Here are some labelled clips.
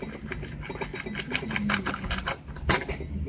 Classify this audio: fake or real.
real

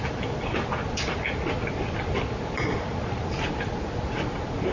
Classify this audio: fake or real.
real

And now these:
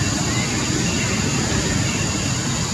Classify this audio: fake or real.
real